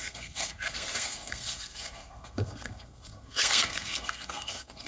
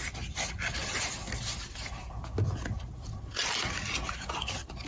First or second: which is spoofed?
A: first